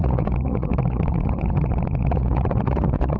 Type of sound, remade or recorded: remade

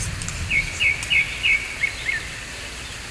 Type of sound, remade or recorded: recorded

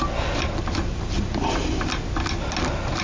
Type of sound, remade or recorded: recorded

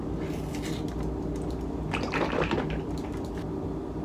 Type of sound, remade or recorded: recorded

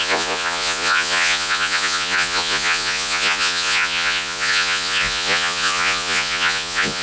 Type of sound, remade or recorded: remade